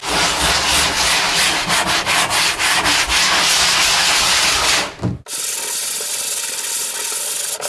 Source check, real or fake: real